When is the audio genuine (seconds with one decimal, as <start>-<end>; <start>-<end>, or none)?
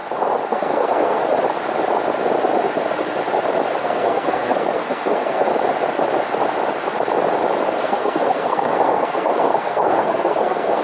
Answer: 0.0-0.5; 1.2-3.8; 5.5-7.8